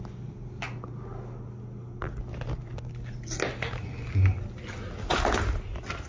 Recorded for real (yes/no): yes